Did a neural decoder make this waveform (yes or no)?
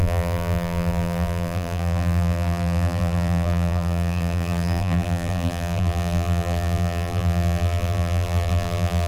yes